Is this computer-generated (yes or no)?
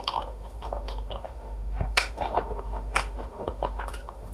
yes